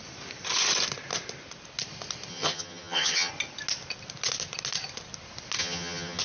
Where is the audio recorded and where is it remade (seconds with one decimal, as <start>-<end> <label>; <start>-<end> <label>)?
0.0-2.3 recorded; 2.3-3.3 remade; 3.3-5.6 recorded; 5.6-6.2 remade